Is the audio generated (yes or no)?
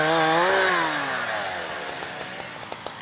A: no